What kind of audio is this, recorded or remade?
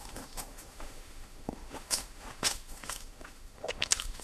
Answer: remade